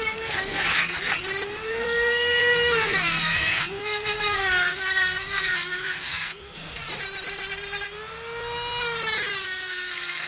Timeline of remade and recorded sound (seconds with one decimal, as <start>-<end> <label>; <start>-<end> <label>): 0.0-1.1 remade; 1.1-1.7 recorded; 1.7-6.8 remade; 6.8-9.4 recorded; 9.4-10.3 remade